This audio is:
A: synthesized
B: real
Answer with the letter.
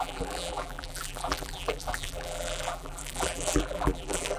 A